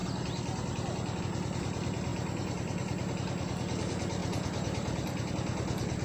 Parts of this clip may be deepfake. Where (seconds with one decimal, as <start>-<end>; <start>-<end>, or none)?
2.1-3.1; 4.2-5.3